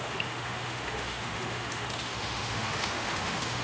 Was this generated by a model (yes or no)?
yes